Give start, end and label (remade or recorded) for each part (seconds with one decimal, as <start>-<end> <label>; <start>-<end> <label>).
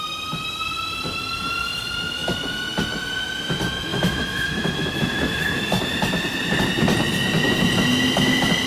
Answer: 0.0-3.9 recorded; 3.9-5.8 remade; 5.8-8.7 recorded